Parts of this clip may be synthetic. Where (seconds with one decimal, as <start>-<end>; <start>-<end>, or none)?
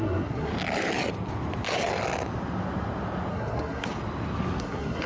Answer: 0.0-0.5; 3.3-3.9; 4.6-5.1